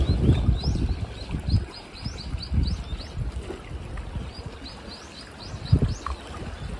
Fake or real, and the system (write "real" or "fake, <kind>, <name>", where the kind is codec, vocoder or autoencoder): real